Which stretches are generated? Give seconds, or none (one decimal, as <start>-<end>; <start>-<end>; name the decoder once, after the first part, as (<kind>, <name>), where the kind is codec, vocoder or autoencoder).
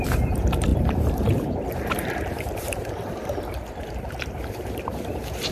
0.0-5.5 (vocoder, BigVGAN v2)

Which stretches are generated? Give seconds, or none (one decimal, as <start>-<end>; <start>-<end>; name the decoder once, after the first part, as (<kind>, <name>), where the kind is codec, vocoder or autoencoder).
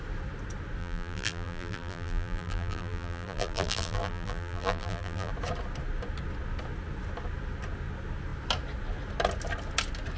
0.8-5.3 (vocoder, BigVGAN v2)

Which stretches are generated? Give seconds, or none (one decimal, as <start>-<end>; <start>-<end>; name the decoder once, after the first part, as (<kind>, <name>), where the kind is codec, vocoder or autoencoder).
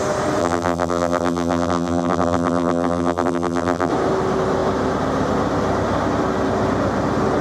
0.4-3.9 (vocoder, BigVGAN v2)